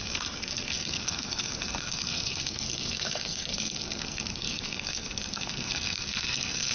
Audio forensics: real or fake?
fake